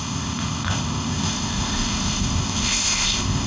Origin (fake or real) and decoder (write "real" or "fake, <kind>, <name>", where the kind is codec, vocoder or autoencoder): fake, codec, ZipCodec